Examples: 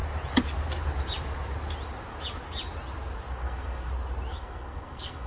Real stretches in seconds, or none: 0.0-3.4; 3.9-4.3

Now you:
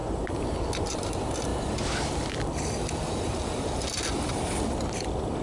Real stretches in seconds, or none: 0.0-5.4

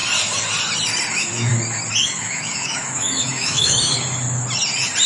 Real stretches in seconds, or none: 0.0-1.1; 1.5-2.0; 3.9-5.1

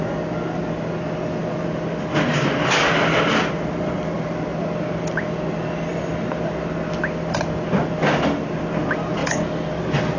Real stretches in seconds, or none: 0.0-10.2

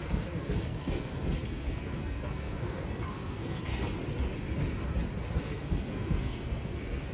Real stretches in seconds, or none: 3.7-5.4